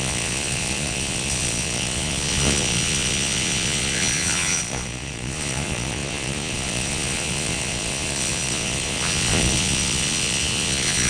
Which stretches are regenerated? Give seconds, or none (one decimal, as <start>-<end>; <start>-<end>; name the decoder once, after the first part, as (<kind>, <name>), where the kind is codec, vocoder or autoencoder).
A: 0.0-11.1 (vocoder, Vocos)